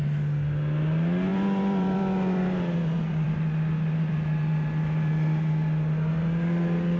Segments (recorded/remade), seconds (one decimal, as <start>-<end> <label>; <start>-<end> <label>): 0.0-1.3 recorded; 1.3-5.5 remade; 5.5-7.0 recorded